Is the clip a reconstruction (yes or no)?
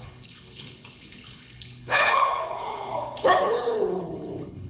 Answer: yes